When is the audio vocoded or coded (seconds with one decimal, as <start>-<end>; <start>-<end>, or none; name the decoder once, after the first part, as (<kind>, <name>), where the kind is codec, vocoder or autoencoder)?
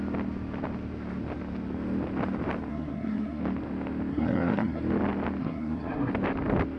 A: 2.7-3.4 (codec, SNAC); 4.1-4.8; 5.4-6.1